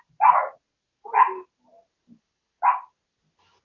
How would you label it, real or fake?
real